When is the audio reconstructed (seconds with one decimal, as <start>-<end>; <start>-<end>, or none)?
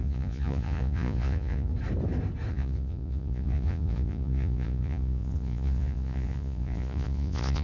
0.0-1.7; 2.5-7.6